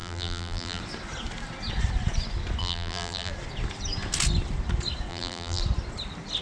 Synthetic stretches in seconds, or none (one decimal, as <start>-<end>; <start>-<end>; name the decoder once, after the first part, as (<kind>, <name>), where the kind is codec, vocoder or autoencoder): 0.0-0.8 (vocoder, BigVGAN v2); 2.6-3.3; 5.1-5.6